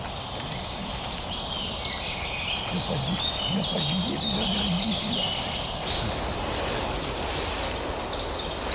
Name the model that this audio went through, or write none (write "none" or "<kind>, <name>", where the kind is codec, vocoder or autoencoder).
none